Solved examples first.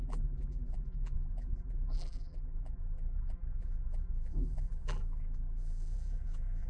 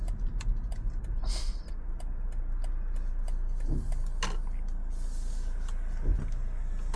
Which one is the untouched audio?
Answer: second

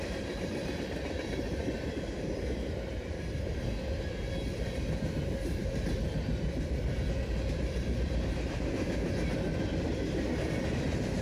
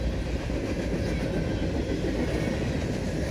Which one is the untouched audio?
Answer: second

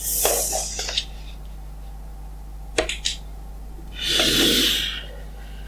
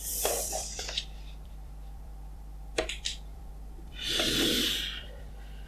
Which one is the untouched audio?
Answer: first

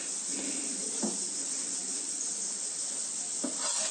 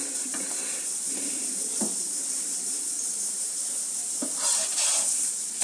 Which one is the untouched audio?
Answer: first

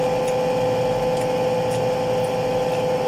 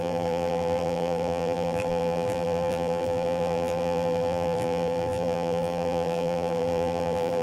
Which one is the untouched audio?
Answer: first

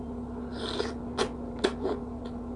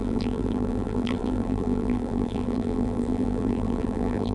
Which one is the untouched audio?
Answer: first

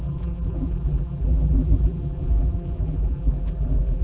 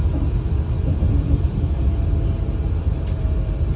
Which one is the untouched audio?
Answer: second